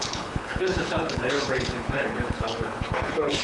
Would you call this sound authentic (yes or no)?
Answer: no